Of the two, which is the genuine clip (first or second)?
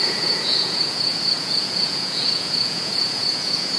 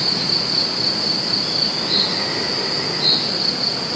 second